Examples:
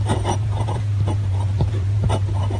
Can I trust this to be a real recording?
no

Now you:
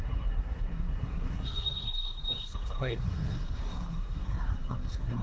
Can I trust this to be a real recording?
no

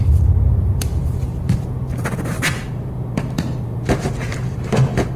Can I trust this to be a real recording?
no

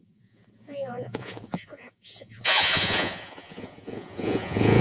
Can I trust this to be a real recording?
no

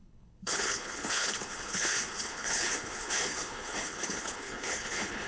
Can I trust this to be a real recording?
no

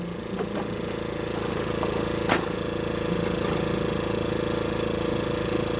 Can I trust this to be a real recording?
yes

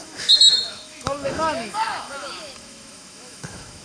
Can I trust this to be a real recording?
no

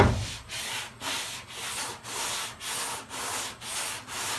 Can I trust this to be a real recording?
yes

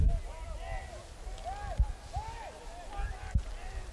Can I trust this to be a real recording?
yes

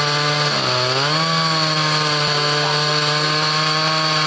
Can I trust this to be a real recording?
yes